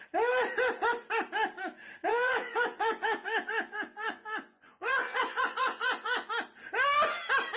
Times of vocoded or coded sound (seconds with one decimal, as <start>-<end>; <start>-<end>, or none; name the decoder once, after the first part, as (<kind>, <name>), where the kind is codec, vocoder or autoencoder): 2.1-6.3 (vocoder, Vocos)